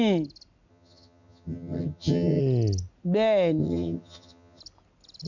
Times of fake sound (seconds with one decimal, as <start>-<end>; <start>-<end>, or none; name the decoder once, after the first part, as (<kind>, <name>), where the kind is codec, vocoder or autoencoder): 0.7-2.4 (vocoder, HiFi-GAN); 3.6-4.6